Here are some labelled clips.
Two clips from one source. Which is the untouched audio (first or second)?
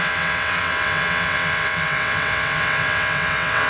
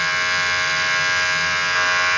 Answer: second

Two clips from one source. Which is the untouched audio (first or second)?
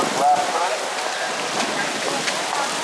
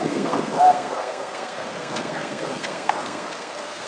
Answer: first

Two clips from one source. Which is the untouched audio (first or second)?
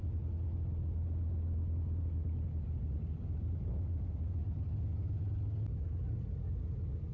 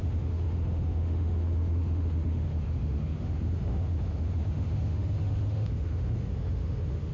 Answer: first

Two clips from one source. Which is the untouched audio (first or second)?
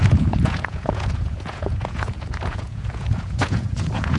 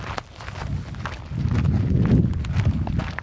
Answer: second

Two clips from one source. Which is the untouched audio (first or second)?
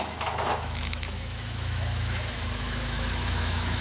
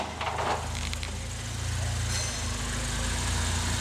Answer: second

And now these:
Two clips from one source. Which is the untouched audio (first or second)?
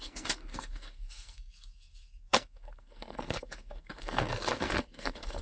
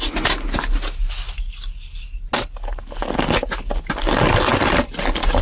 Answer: second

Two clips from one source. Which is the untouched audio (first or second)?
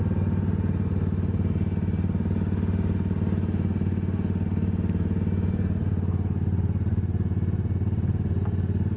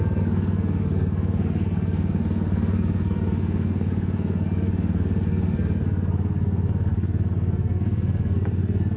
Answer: first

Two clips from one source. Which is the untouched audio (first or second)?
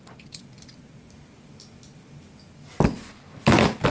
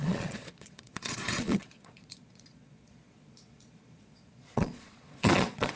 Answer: first